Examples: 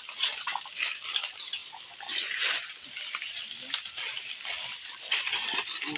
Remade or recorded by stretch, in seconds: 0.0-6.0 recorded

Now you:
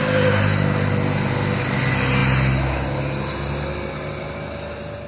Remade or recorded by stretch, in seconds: 0.0-5.1 recorded

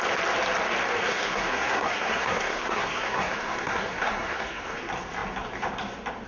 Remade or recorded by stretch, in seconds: 0.0-1.0 recorded; 1.0-4.8 remade; 4.8-6.3 recorded

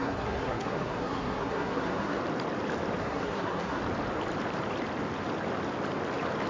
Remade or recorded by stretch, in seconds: 0.0-2.2 remade; 2.2-3.0 recorded; 3.0-3.8 remade; 3.8-6.5 recorded

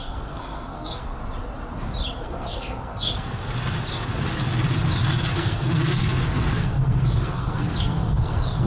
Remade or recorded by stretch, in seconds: 0.0-1.2 remade; 1.2-2.2 recorded; 2.2-3.4 remade; 3.4-5.3 recorded; 5.3-8.7 remade

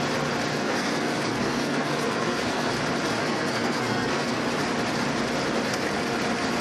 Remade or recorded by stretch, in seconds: 0.0-0.5 recorded; 0.5-2.7 remade; 2.7-3.2 recorded; 3.2-4.4 remade; 4.4-6.6 recorded

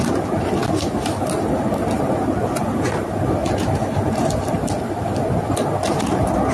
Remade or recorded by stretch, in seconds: 0.0-6.5 recorded